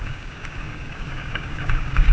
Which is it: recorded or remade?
remade